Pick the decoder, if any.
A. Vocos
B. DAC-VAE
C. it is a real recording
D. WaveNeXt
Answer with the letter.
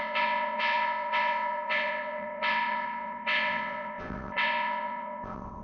D